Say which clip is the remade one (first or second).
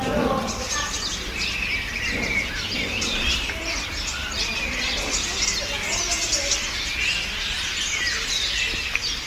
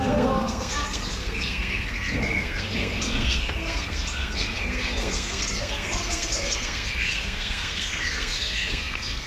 second